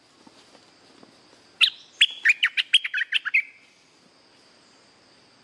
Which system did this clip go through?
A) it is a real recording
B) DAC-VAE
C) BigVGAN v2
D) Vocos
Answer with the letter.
A